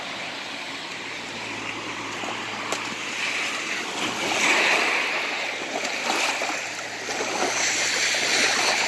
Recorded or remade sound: recorded